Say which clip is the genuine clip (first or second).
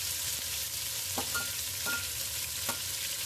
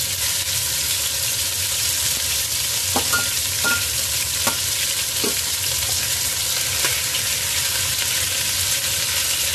first